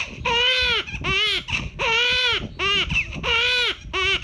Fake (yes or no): no